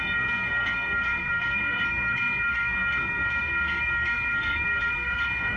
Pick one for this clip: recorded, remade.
remade